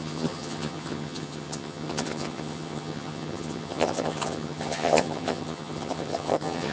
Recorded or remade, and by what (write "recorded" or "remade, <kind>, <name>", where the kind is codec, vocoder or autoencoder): remade, vocoder, HiFi-GAN